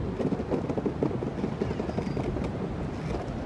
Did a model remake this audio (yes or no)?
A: no